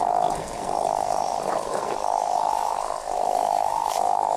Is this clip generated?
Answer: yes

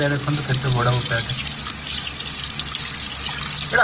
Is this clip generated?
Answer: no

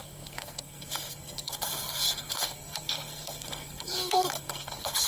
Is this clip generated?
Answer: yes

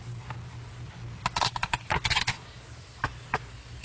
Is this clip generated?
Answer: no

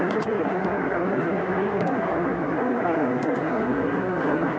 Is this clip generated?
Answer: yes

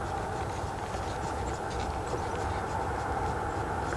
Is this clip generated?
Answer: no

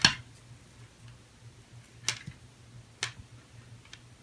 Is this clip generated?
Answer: no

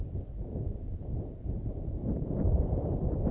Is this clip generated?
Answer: no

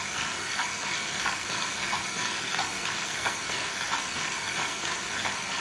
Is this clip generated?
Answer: yes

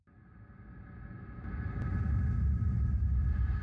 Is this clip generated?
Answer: no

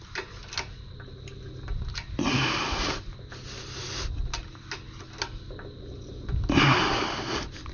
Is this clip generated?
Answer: no